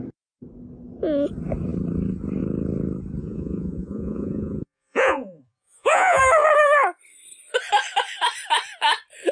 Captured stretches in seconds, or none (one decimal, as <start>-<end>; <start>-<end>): 0.0-3.2; 6.2-9.3